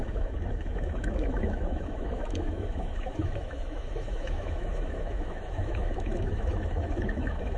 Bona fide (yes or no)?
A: no